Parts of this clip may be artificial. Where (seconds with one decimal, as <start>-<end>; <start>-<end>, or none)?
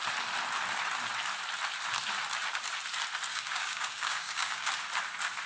3.3-4.7